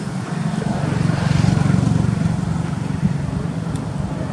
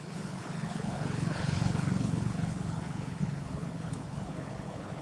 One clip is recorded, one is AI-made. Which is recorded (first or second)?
first